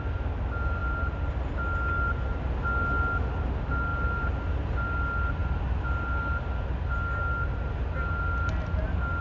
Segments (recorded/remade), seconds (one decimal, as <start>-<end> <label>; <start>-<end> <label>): 0.0-9.2 recorded